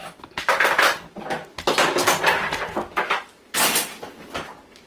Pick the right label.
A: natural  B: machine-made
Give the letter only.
A